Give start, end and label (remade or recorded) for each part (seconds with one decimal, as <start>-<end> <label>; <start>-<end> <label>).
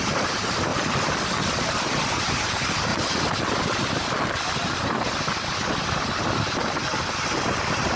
0.0-0.7 remade; 0.7-1.6 recorded; 1.6-2.9 remade; 2.9-7.6 recorded; 7.6-8.0 remade